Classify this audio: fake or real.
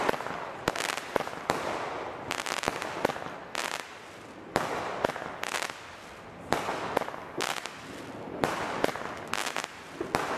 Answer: real